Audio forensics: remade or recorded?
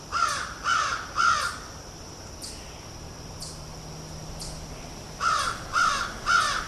recorded